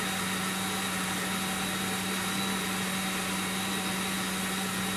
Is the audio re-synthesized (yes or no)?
no